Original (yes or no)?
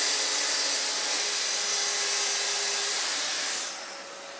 yes